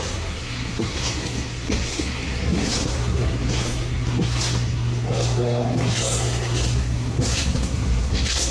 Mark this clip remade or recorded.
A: remade